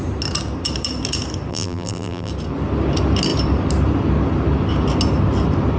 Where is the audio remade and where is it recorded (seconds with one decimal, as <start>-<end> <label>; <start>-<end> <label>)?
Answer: 0.0-1.5 recorded; 1.5-2.3 remade; 2.3-5.8 recorded